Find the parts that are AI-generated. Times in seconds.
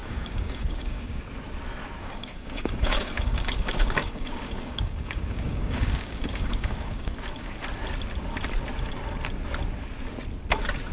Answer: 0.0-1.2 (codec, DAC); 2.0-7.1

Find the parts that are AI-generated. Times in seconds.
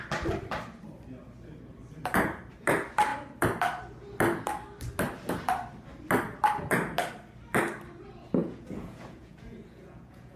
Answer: 8.4-10.4 (vocoder, Vocos)